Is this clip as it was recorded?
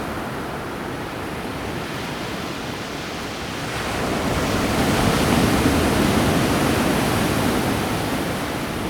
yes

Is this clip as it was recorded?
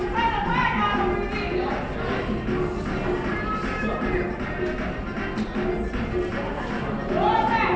yes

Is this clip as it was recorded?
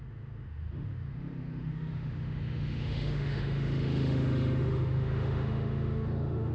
no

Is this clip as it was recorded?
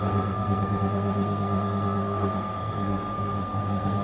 no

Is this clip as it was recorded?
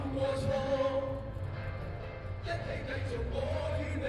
yes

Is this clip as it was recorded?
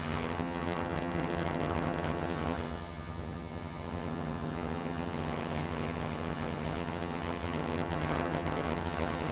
no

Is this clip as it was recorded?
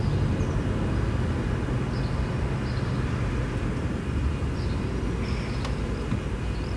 yes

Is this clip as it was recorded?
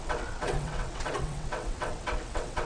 no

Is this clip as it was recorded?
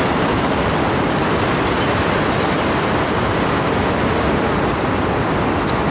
yes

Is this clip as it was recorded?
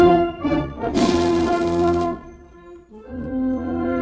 no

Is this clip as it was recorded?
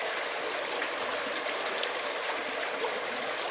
yes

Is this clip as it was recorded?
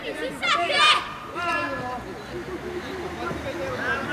yes